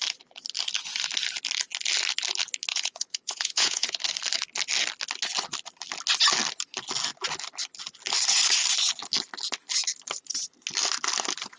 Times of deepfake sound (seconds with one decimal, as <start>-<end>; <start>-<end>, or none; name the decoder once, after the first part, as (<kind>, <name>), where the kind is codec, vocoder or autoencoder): 2.7-4.0 (vocoder, Vocos)